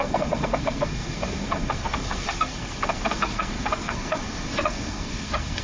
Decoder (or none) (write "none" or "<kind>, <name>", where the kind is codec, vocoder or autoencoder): codec, SNAC